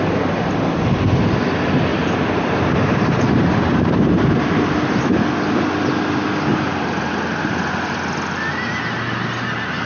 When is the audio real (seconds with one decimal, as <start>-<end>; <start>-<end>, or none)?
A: 0.0-1.9; 5.0-6.5; 7.1-9.9